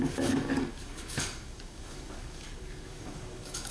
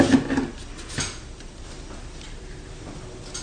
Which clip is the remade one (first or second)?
first